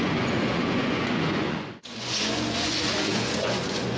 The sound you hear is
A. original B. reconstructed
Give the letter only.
B